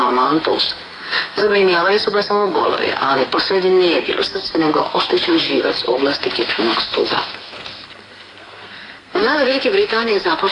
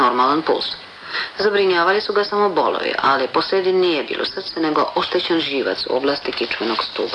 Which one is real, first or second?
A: second